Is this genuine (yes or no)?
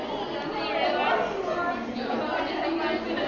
yes